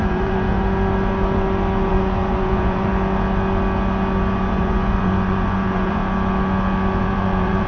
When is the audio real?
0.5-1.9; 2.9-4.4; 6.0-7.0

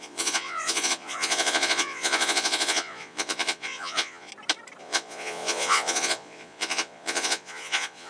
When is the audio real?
4.3-4.8